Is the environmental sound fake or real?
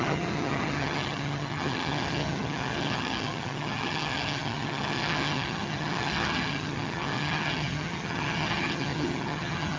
fake